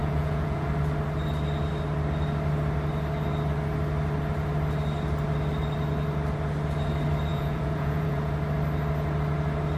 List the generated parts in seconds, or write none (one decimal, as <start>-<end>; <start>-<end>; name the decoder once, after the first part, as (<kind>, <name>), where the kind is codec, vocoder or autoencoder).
0.0-0.7 (vocoder, Vocos); 7.3-8.3